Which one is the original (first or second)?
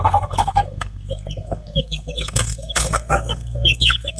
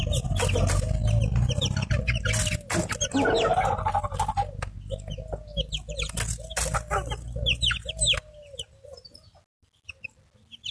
second